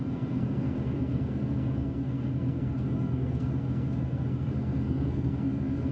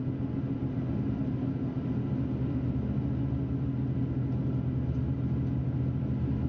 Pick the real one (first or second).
second